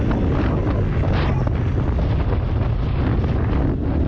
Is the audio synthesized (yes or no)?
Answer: no